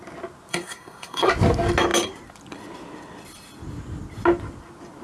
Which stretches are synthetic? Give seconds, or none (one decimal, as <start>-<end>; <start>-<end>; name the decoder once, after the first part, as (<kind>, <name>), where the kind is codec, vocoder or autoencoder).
0.5-1.3 (codec, SNAC)